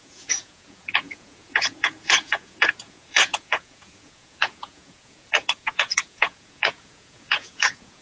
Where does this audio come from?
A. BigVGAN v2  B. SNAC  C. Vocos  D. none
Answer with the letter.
C